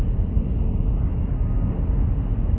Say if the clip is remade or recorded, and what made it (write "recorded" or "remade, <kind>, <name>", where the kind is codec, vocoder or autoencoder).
recorded